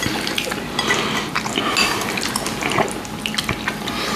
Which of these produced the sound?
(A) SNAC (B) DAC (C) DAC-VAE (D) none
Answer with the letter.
D